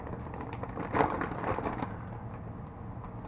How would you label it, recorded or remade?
remade